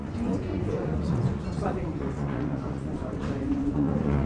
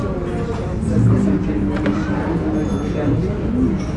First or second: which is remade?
first